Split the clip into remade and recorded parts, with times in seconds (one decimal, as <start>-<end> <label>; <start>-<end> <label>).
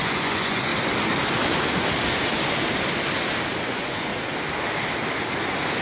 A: 0.0-0.7 remade; 0.7-3.6 recorded; 3.6-4.1 remade; 4.1-5.8 recorded